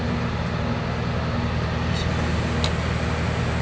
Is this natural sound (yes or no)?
yes